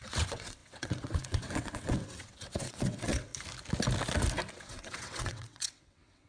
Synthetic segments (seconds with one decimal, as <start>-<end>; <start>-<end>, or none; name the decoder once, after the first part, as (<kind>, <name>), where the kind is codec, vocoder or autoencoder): 0.0-3.3 (vocoder, WaveNeXt); 4.5-6.3